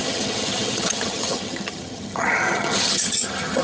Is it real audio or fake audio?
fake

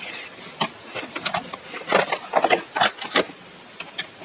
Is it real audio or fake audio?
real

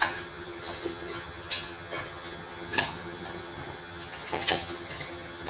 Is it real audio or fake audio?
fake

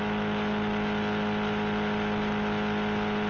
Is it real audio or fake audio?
real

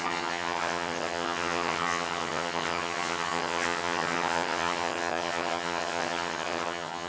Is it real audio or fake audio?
fake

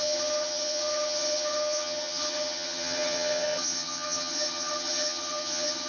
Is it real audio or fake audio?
fake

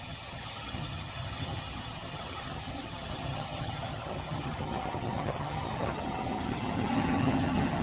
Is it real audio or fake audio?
fake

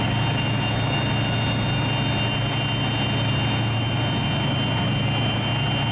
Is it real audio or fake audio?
real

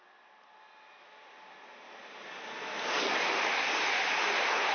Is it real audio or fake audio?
real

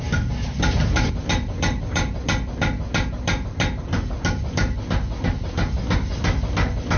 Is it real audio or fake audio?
real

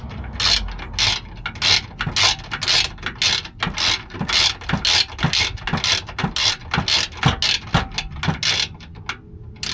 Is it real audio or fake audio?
real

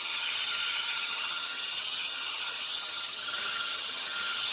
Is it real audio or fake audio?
fake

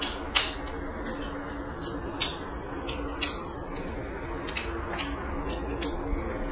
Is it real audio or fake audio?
real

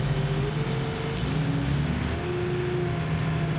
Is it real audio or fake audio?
real